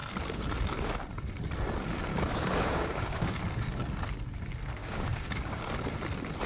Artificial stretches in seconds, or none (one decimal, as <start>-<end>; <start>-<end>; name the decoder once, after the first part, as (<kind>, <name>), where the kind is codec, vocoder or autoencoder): 2.1-3.4 (codec, DAC); 4.8-5.6